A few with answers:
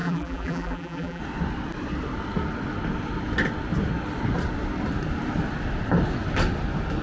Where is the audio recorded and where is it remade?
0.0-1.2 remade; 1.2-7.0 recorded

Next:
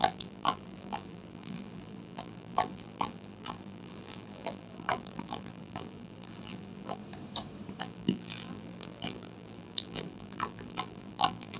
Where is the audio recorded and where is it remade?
0.0-7.0 remade; 7.0-7.8 recorded; 7.8-11.6 remade

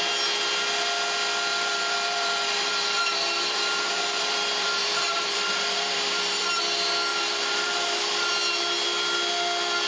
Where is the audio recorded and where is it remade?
0.0-1.5 recorded; 1.5-6.6 remade; 6.6-7.1 recorded; 7.1-8.3 remade; 8.3-9.9 recorded

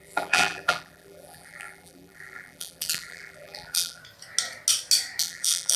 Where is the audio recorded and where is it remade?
0.0-4.0 remade; 4.0-5.2 recorded; 5.2-5.8 remade

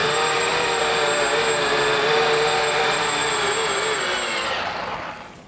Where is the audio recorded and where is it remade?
0.0-0.8 remade; 0.8-1.9 recorded; 1.9-3.3 remade; 3.3-5.5 recorded